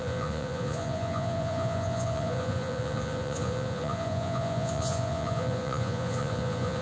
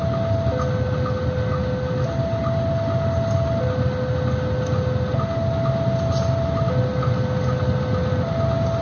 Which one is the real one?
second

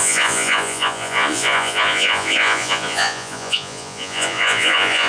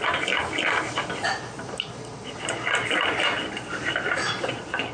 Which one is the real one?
second